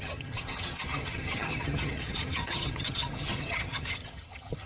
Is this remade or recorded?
remade